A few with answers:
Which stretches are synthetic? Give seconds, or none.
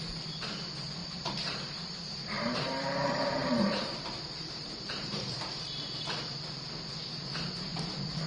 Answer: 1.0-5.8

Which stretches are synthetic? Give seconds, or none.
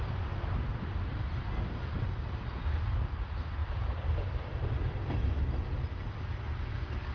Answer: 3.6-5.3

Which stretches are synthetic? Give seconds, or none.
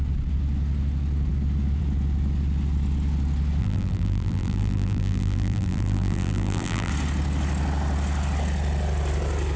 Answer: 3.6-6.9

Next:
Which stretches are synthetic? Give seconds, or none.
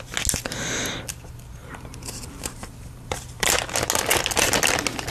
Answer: 1.6-3.5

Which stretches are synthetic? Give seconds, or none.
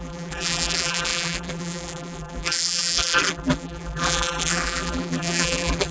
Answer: 0.0-5.9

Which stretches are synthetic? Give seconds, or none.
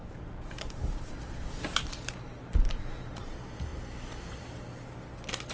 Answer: 0.0-3.3